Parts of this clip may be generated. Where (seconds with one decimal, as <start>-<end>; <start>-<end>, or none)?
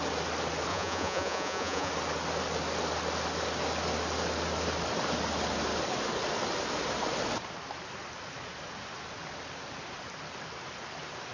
0.7-1.9